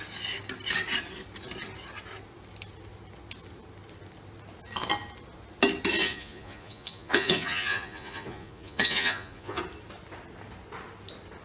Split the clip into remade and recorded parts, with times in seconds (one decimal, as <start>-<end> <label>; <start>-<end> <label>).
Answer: 0.0-6.0 recorded; 6.0-9.6 remade; 9.6-11.4 recorded